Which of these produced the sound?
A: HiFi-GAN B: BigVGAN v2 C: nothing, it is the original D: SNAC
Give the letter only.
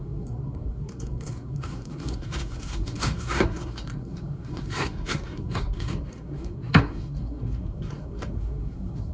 D